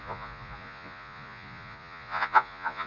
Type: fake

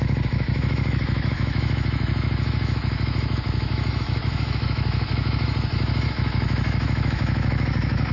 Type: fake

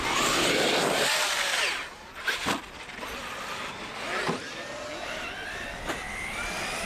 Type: real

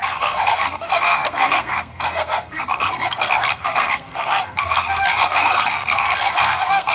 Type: fake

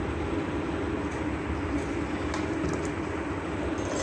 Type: real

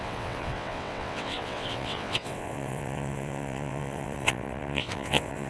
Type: fake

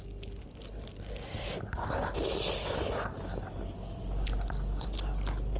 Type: real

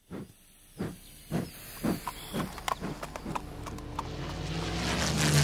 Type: real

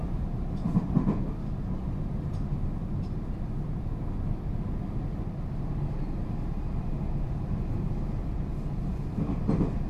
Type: real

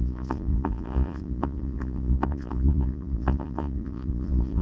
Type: fake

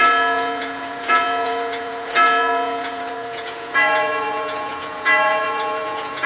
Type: fake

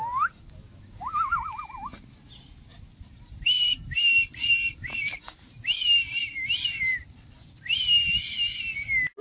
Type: real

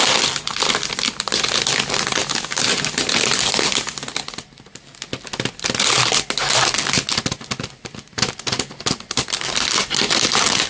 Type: real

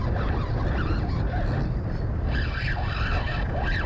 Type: real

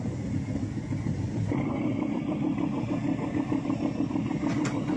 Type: real